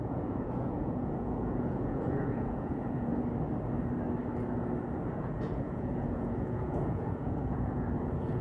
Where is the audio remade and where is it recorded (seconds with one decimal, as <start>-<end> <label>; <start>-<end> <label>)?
0.0-3.1 remade; 3.1-5.2 recorded; 5.2-8.4 remade